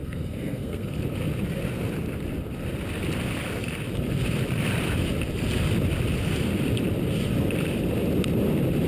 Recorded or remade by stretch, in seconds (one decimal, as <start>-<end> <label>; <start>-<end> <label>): 0.0-0.9 remade; 0.9-8.9 recorded